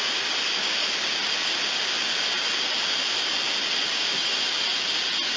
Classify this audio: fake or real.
real